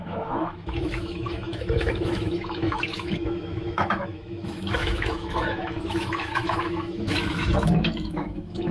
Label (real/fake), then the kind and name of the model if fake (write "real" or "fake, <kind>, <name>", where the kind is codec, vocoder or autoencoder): fake, autoencoder, DAC-VAE